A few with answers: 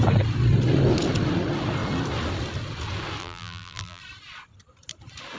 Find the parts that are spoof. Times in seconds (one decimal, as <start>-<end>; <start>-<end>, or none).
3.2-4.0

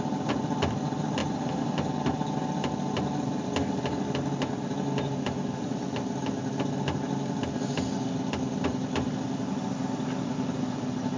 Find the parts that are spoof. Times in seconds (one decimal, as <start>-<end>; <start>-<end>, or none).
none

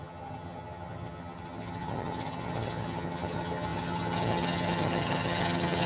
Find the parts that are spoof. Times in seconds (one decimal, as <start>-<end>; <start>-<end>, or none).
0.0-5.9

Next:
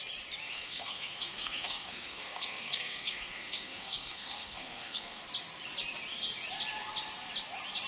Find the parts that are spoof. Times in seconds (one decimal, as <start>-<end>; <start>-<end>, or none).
0.5-5.2